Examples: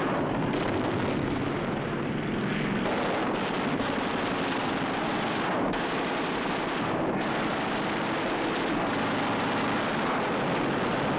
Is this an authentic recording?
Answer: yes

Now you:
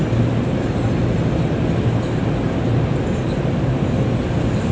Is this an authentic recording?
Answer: yes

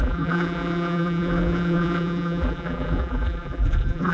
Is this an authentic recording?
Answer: no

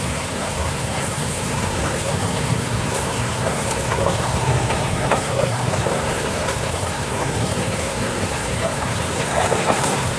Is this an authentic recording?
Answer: no